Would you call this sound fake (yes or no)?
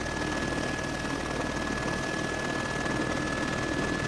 no